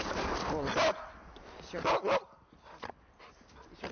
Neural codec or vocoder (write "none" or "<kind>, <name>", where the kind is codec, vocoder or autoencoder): none